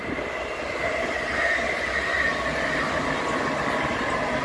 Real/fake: real